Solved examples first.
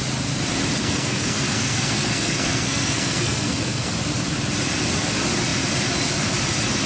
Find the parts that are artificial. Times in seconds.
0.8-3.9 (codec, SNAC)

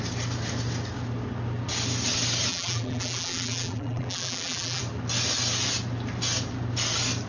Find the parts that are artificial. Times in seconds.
2.5-4.8 (vocoder, BigVGAN v2)